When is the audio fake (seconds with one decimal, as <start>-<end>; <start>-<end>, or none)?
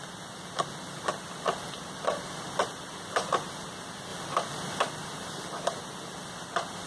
none